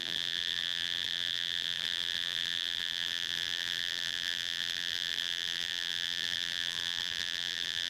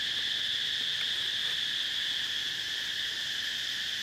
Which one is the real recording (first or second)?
second